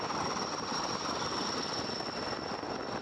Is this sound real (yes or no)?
yes